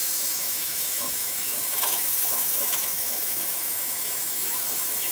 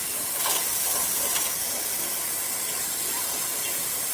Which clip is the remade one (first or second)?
first